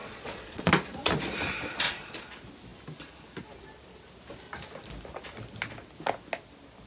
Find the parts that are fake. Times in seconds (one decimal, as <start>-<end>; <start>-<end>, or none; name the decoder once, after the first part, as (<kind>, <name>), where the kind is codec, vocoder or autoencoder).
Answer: 0.0-0.7 (vocoder, Vocos)